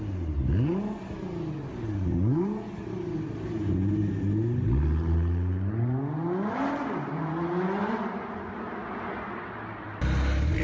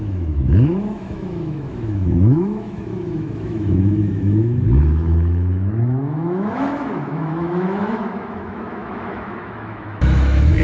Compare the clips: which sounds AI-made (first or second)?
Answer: second